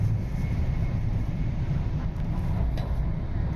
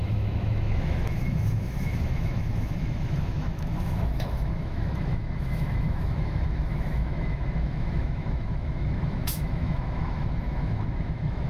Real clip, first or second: first